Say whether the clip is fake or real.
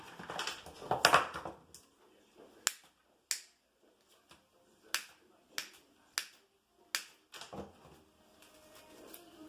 real